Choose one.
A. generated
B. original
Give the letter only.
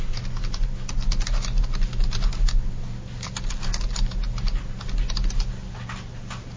B